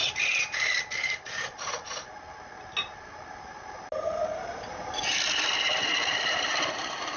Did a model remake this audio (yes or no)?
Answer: no